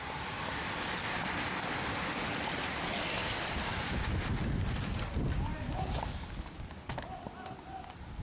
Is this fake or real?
real